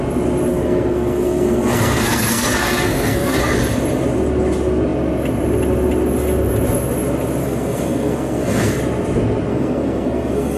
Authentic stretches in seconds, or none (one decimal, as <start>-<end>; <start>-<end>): 0.0-0.5; 3.4-7.4; 8.8-9.5